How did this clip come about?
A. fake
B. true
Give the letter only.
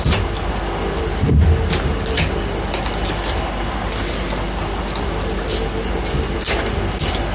B